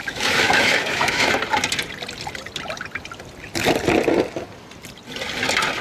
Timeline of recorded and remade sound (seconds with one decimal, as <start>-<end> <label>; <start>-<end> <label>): 0.0-1.3 remade; 1.3-5.8 recorded